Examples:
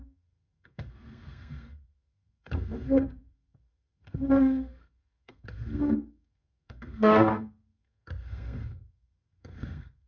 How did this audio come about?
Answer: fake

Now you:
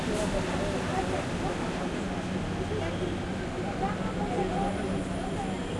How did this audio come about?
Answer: real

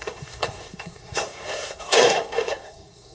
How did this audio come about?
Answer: fake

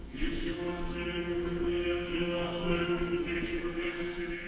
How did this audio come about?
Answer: fake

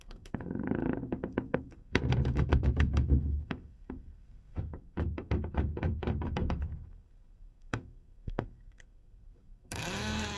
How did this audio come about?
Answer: fake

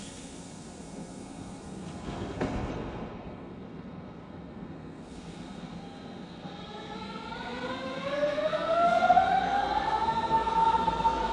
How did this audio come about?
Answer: fake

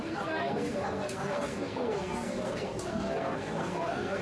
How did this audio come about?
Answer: fake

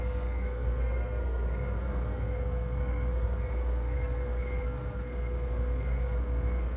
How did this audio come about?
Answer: fake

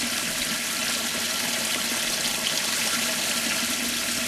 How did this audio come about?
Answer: real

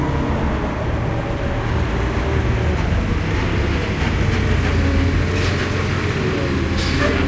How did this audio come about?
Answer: real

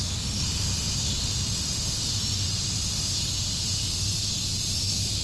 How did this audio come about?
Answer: real